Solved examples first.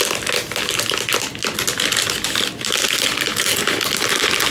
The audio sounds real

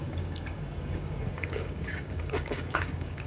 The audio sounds fake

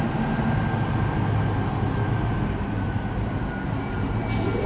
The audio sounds real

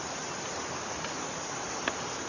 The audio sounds real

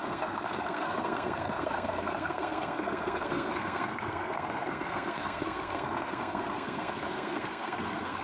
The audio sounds fake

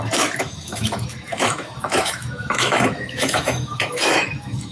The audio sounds fake